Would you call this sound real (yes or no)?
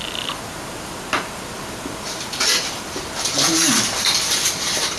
yes